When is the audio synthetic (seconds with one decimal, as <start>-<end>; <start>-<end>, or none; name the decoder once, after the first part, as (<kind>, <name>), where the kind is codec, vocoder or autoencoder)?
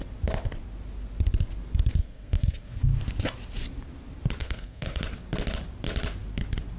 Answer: 2.0-2.8 (codec, SNAC); 4.4-5.0